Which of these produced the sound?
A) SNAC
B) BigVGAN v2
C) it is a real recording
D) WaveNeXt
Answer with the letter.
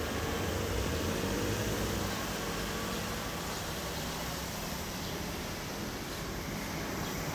B